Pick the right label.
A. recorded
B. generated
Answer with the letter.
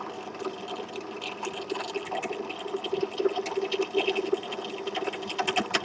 A